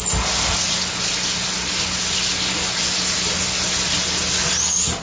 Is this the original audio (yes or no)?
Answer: yes